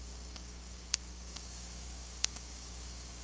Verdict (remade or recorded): remade